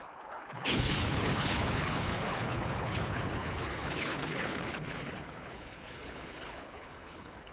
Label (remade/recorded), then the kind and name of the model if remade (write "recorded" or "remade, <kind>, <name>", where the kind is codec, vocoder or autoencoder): remade, codec, HILCodec